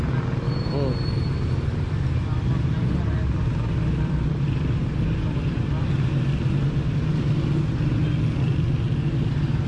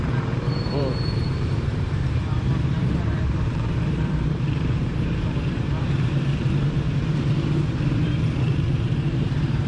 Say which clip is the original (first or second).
first